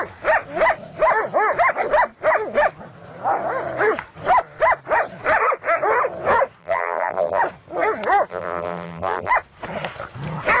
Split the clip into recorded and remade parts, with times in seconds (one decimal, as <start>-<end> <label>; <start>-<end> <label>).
0.0-6.6 recorded; 6.6-7.4 remade; 7.4-8.3 recorded; 8.3-9.3 remade; 9.3-10.6 recorded